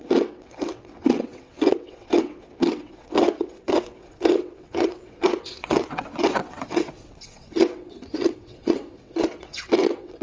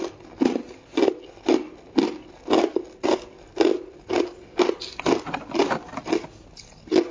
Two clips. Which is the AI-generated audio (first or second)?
first